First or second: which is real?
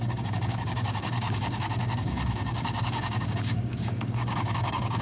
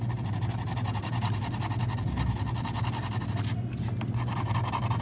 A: second